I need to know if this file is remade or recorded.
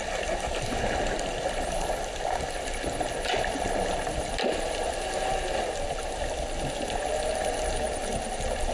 recorded